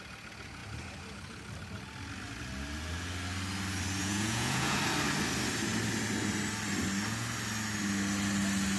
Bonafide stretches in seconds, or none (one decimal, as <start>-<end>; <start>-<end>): 0.0-4.0; 4.8-8.8